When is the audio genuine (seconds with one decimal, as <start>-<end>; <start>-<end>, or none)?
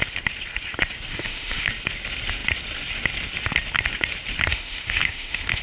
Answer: 0.0-1.1; 1.7-4.5